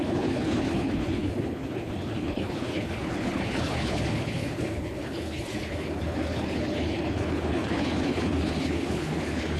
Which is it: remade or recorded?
remade